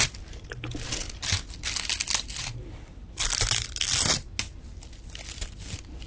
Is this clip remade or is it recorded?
recorded